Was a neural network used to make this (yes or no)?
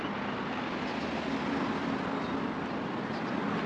no